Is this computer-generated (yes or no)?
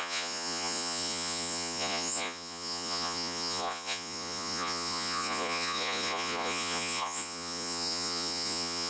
yes